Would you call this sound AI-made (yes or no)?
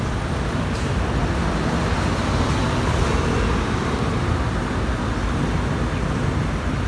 no